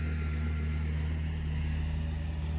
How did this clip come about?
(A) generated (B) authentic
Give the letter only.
B